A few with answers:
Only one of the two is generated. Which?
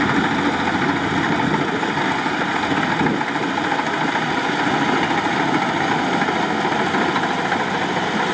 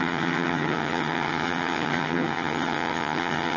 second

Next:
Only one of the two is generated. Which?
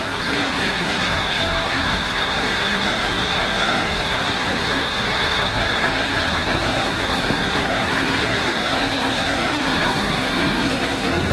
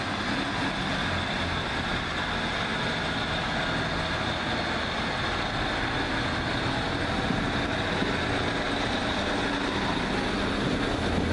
first